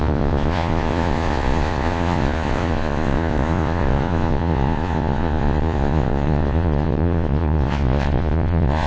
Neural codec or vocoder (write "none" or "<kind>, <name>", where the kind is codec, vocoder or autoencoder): vocoder, Vocos